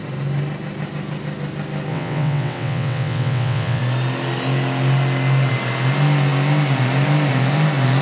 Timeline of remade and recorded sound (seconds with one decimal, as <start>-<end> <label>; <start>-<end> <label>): 0.0-1.9 recorded; 1.9-3.8 remade; 3.8-8.0 recorded